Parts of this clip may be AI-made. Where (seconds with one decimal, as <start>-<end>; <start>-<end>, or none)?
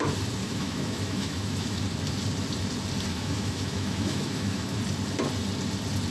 0.4-1.8; 3.1-4.8